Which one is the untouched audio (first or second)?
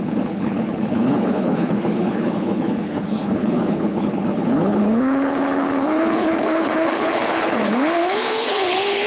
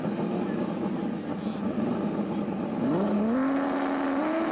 second